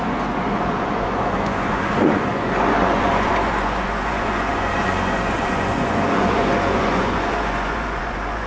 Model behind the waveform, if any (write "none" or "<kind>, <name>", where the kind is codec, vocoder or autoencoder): vocoder, Vocos